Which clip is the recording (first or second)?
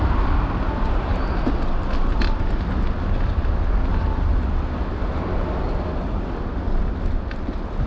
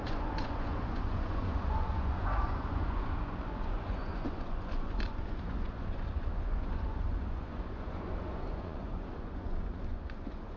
first